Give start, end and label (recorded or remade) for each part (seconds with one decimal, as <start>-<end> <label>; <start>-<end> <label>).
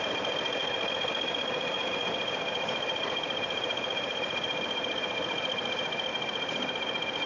0.0-7.3 recorded